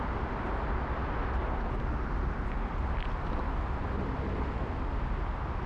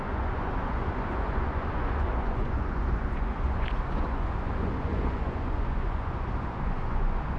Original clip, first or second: first